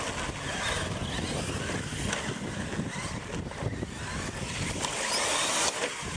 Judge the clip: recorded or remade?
recorded